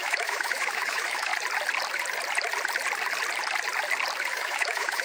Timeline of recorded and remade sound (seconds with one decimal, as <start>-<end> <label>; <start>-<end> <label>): 0.0-1.3 remade; 1.3-4.3 recorded; 4.3-5.0 remade